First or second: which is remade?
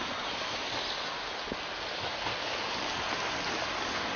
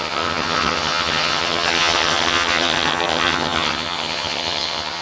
second